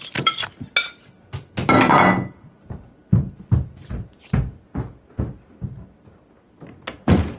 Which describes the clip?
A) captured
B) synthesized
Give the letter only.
A